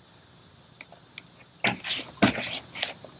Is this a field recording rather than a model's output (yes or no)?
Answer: yes